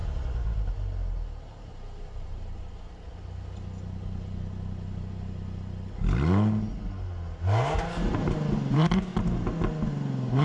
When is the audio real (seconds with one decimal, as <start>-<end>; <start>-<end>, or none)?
0.0-1.1; 3.1-8.1; 9.1-9.9